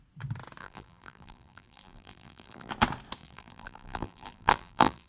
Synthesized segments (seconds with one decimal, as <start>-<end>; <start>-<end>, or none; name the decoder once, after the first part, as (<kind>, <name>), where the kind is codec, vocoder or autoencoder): 0.6-2.7 (vocoder, BigVGAN v2); 3.2-5.1